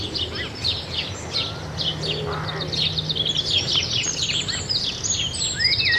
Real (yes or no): yes